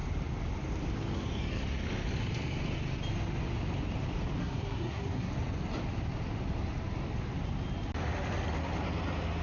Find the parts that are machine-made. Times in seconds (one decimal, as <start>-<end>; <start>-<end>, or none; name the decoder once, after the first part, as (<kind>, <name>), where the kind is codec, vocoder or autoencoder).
4.4-5.3 (codec, SNAC)